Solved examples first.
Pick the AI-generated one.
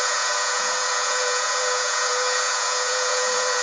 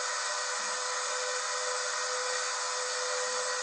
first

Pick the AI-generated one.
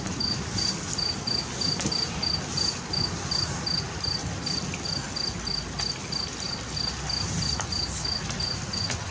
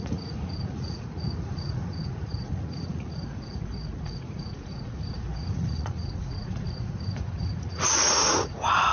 second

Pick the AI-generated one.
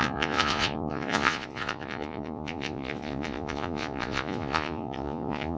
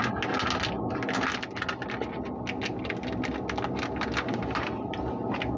first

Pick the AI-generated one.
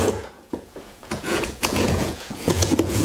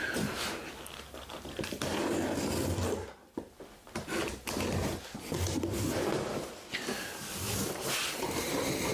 first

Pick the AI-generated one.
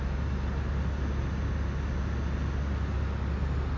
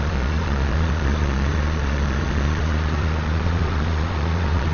second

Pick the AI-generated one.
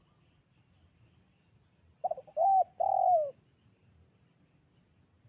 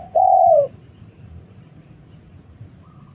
second